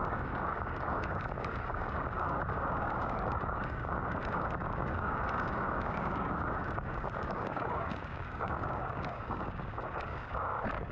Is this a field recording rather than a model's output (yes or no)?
no